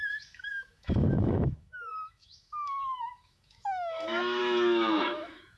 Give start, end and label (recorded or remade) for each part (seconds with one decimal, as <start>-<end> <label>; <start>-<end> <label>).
0.0-5.6 remade